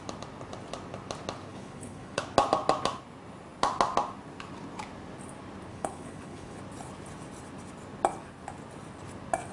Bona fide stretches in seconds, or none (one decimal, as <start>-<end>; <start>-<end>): 0.0-1.5; 2.2-5.7; 6.6-9.5